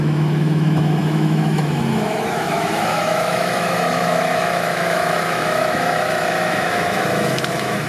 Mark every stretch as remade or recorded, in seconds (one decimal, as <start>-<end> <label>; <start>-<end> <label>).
0.0-7.9 remade